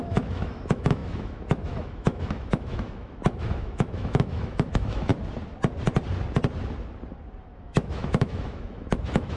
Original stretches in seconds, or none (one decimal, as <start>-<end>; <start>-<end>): 5.1-7.4